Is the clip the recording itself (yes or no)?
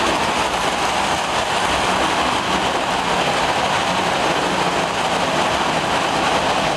yes